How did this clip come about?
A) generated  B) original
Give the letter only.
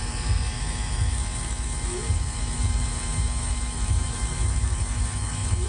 A